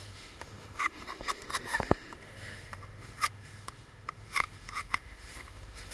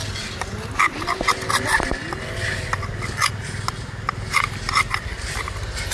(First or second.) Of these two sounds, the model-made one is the first